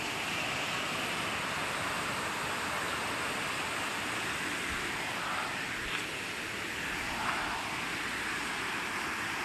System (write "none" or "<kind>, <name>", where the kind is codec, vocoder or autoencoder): none